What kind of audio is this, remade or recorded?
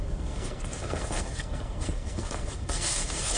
remade